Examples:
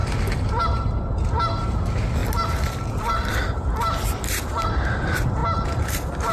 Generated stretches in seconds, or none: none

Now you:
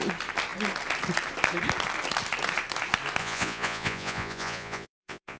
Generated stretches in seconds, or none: 3.2-5.4 (vocoder, Vocos)

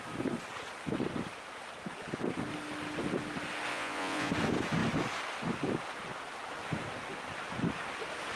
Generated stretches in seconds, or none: 3.7-4.3 (vocoder, Vocos)

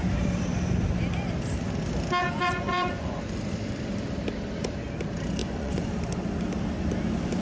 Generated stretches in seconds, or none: 2.2-3.2 (vocoder, Vocos); 5.4-5.9

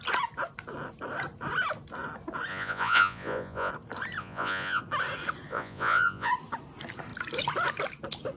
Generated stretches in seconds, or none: 2.5-3.7 (vocoder, Vocos); 4.2-4.8; 5.5-6.3